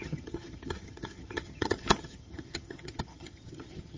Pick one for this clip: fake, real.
fake